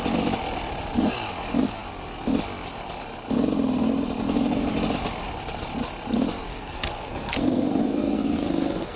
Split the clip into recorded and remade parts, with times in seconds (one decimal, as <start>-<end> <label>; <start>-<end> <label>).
0.0-6.5 recorded; 6.5-9.0 remade